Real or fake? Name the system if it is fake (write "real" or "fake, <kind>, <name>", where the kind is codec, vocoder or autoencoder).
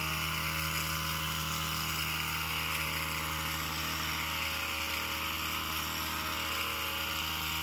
real